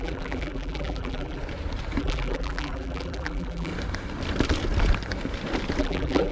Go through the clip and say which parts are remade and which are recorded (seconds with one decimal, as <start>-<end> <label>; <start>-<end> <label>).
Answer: 0.0-1.4 remade; 1.4-2.0 recorded; 2.0-3.7 remade; 3.7-5.8 recorded; 5.8-6.3 remade